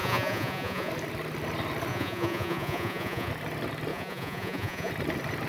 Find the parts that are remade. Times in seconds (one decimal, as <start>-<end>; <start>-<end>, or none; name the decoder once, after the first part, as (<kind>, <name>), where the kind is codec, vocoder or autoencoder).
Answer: 0.0-0.9 (vocoder, Vocos); 1.9-3.3; 3.9-4.9